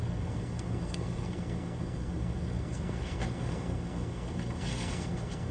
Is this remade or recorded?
remade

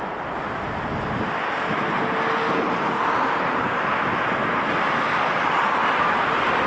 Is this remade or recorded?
recorded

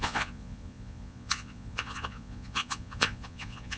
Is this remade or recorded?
remade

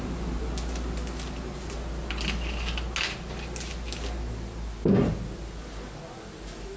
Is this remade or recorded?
recorded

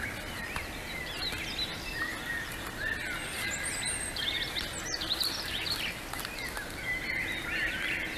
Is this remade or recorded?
recorded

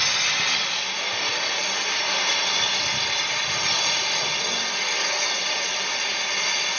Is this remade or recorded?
recorded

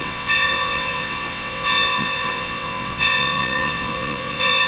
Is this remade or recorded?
remade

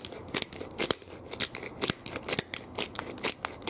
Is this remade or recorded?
recorded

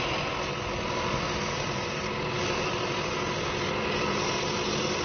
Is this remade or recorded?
recorded